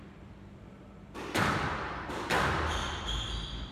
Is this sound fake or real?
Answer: fake